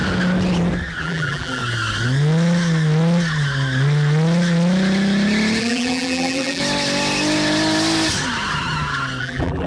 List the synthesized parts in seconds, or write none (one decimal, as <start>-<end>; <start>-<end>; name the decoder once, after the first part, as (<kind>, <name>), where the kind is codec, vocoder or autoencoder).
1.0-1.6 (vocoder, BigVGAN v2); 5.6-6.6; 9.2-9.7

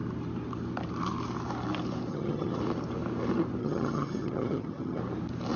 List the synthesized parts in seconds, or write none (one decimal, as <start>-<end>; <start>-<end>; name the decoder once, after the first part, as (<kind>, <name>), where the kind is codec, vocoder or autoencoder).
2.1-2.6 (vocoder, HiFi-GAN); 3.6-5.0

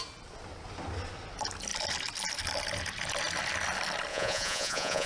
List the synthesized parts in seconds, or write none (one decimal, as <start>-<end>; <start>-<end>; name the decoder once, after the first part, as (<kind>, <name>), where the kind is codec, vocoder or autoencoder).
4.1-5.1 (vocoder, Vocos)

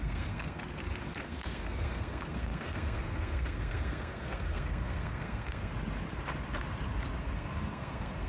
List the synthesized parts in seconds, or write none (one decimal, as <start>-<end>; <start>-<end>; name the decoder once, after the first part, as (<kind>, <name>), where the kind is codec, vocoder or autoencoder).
0.0-0.6 (codec, SNAC); 1.2-5.7; 7.2-8.3